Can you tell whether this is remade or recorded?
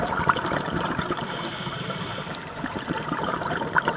remade